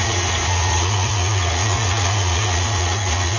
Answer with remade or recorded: remade